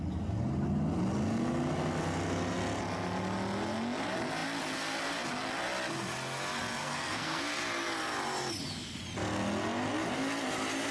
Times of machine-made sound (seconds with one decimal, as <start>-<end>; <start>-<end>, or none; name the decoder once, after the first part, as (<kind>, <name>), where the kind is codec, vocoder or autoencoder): 6.8-7.4 (codec, SNAC)